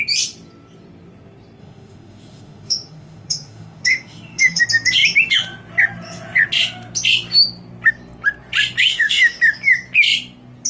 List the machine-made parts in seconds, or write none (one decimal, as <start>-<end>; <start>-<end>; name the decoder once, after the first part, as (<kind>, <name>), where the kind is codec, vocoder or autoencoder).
1.6-4.6 (autoencoder, DAC-VAE); 8.9-9.4